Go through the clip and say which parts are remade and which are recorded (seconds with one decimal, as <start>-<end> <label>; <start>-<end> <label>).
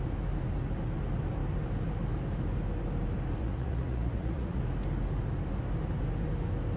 0.0-3.4 recorded; 3.4-4.6 remade; 4.6-6.8 recorded